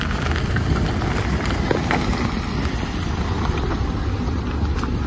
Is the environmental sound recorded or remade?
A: recorded